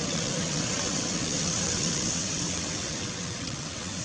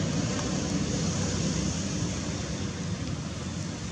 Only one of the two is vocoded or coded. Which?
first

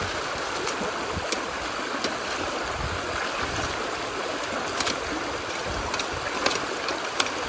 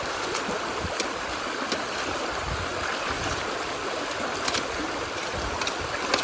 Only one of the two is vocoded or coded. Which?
second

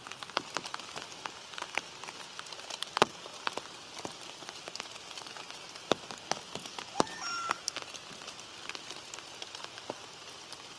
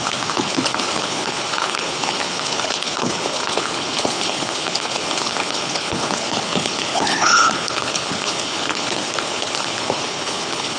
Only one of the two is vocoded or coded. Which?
second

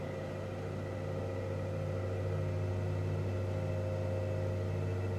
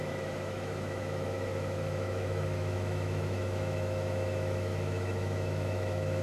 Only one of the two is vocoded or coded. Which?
second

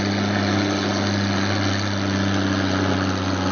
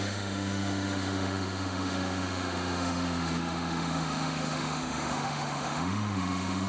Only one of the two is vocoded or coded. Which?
second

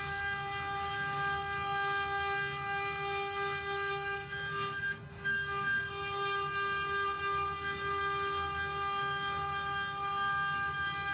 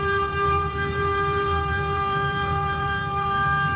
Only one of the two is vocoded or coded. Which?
second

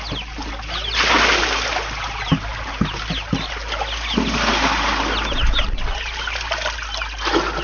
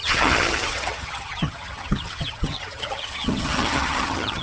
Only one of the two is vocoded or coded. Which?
second